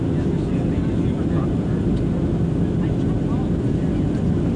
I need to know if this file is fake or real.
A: real